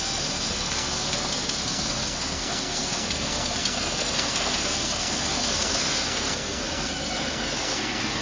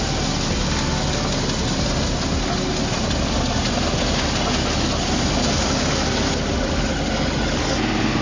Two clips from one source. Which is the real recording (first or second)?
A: second